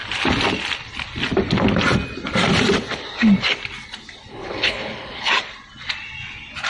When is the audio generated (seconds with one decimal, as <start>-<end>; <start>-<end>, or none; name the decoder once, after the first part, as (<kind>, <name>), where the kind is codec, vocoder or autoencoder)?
4.3-5.3 (codec, HILCodec)